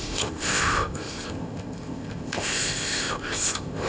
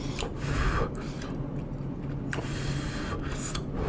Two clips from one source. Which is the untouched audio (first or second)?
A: second